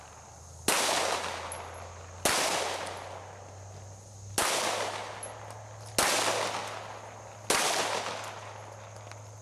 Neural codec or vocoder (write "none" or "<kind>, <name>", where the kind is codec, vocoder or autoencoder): none